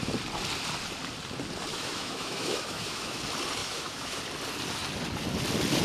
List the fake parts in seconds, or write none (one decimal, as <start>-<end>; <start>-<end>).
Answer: 1.7-3.2; 3.6-4.2